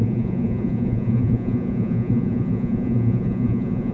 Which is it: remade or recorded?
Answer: remade